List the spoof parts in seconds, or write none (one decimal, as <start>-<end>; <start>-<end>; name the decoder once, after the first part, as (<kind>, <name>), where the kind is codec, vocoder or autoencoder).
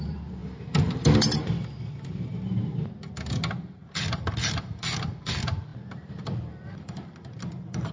0.0-0.4 (vocoder, BigVGAN v2); 4.1-7.9